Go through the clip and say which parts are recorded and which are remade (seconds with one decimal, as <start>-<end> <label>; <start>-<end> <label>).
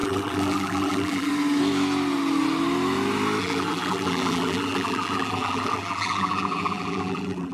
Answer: 0.0-1.3 remade; 1.3-3.4 recorded; 3.4-7.5 remade